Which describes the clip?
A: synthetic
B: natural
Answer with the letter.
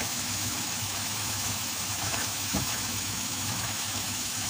A